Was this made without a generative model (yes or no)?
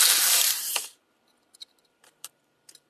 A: no